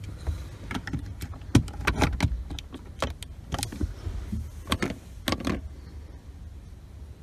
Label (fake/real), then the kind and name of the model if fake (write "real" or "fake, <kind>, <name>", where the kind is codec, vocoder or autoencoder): real